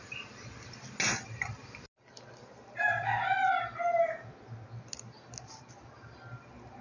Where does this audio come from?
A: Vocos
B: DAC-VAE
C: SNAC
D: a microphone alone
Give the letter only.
D